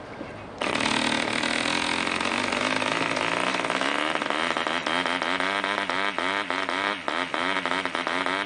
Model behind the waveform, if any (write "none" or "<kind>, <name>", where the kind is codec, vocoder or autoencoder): none